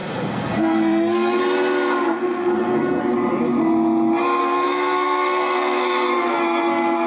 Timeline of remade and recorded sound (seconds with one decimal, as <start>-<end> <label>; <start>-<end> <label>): 0.0-1.4 remade; 1.4-1.9 recorded; 1.9-3.0 remade; 3.0-4.4 recorded; 4.4-7.1 remade

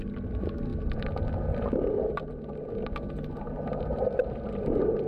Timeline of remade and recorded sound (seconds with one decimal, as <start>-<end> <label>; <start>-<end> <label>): 0.0-5.1 recorded

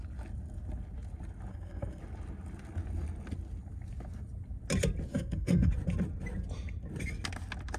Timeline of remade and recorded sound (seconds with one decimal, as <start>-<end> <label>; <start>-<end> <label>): 0.0-1.5 recorded; 1.5-2.0 remade; 2.0-5.1 recorded; 5.1-5.7 remade; 5.7-7.8 recorded

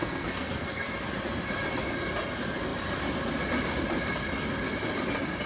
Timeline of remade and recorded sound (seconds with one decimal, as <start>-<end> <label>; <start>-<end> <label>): 0.0-0.9 remade; 0.9-5.5 recorded

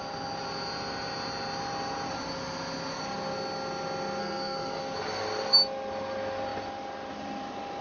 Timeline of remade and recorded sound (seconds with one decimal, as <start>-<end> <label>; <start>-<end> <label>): 0.0-4.2 recorded; 4.2-4.8 remade; 4.8-7.8 recorded

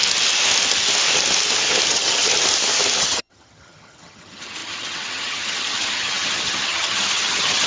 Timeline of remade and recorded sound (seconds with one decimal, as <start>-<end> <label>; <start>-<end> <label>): 0.0-1.9 recorded; 1.9-2.3 remade; 2.3-3.0 recorded; 3.0-7.7 remade

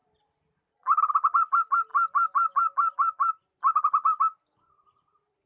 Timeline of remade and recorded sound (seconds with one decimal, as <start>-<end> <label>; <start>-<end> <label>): 0.0-1.1 remade; 1.1-5.5 recorded

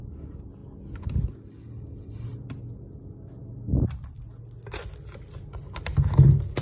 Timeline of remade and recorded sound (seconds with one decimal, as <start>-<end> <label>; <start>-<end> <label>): 0.0-6.6 recorded